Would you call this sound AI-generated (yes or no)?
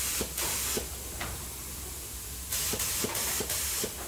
no